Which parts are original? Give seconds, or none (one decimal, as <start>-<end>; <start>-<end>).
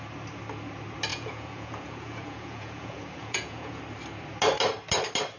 0.0-1.1; 3.8-5.4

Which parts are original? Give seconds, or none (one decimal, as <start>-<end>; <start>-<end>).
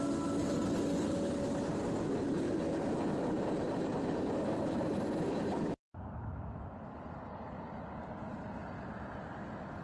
0.0-9.8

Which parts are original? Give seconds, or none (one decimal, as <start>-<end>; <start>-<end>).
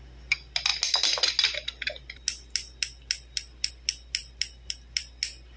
0.0-5.6